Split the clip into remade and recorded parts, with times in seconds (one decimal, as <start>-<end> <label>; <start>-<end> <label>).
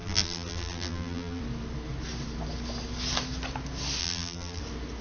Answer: 0.0-1.4 remade; 1.4-4.0 recorded; 4.0-4.6 remade; 4.6-5.0 recorded